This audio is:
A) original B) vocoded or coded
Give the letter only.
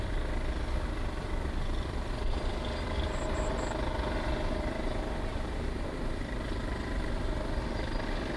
A